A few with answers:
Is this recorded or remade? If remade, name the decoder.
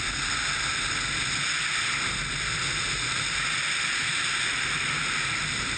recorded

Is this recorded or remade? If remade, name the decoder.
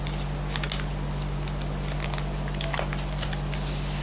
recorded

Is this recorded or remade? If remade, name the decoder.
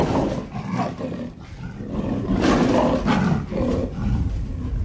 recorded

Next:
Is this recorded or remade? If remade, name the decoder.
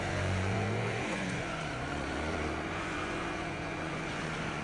remade, vocoder, Vocos